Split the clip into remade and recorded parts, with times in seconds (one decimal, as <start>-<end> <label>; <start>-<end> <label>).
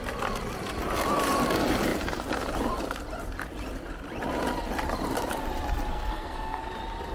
0.0-5.9 recorded; 5.9-6.6 remade; 6.6-7.1 recorded